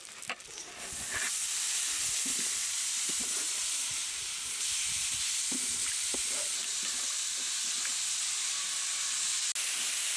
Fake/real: real